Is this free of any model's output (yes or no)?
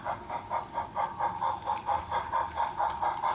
yes